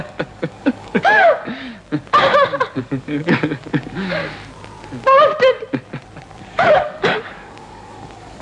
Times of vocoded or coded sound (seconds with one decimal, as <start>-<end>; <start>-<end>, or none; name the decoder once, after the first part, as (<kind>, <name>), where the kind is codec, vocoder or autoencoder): 0.0-1.7 (codec, DAC); 2.8-4.2; 6.4-8.4